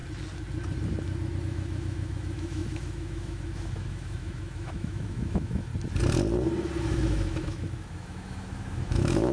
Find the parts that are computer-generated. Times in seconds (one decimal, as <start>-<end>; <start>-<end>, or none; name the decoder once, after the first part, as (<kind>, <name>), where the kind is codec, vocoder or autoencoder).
1.4-5.7 (autoencoder, DAC-VAE); 6.8-9.3